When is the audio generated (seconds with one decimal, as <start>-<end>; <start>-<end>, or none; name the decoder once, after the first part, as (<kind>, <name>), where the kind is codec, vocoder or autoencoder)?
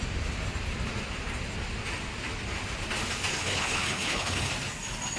3.3-4.5 (codec, HILCodec)